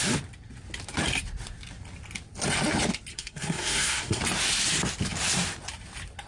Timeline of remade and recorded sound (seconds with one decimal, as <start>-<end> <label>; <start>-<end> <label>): 0.0-3.1 recorded; 3.1-4.2 remade; 4.2-6.3 recorded